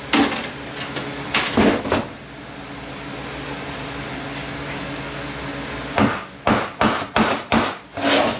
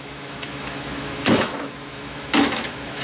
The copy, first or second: second